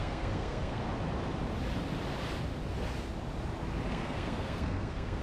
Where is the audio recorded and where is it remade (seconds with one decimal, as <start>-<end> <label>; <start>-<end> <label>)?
0.0-0.8 remade; 0.8-3.9 recorded; 3.9-5.2 remade